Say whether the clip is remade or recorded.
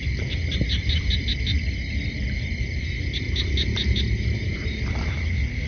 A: recorded